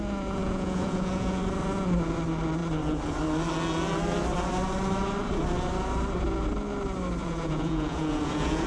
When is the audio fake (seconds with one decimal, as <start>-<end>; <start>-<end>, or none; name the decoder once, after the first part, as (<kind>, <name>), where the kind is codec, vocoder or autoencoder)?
0.4-1.4 (vocoder, Vocos); 7.2-8.7